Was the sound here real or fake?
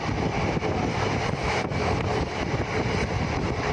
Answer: fake